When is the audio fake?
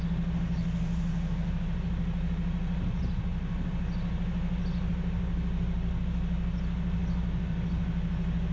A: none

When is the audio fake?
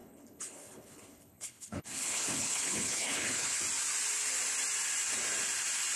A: 0.0-3.6 (codec, HILCodec)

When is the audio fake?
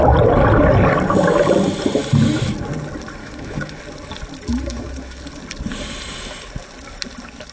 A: 3.2-3.8 (autoencoder, DAC-VAE); 4.5-5.2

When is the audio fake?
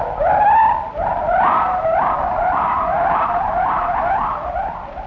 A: 0.9-4.0 (vocoder, BigVGAN v2)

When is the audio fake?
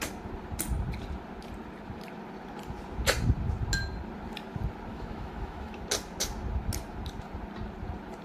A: 4.9-5.8 (autoencoder, DAC-VAE)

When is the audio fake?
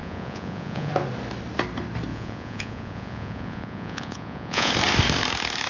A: 0.0-0.9 (vocoder, Vocos); 2.1-4.7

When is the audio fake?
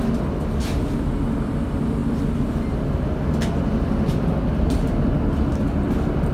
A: none